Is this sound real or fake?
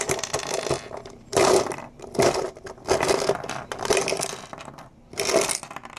real